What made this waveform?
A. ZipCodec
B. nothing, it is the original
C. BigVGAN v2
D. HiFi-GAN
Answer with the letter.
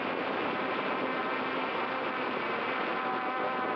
B